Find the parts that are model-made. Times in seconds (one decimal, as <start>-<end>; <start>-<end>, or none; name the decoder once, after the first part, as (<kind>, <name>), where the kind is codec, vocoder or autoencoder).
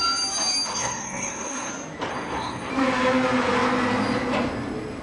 0.7-1.7 (codec, SNAC); 2.1-2.7